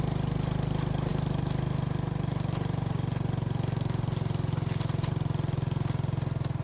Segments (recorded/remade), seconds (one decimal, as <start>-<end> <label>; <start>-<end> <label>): 0.0-6.6 recorded